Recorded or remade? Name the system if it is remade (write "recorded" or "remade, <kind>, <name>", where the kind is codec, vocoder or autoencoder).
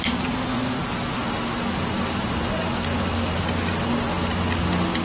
recorded